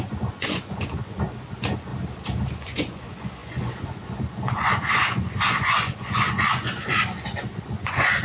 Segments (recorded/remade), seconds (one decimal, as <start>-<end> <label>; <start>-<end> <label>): 0.0-1.9 remade; 1.9-2.5 recorded; 2.5-8.2 remade